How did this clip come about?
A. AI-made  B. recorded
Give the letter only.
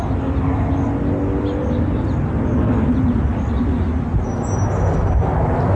B